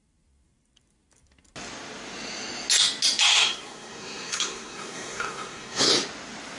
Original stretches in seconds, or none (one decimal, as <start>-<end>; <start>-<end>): 0.0-3.3; 5.9-6.6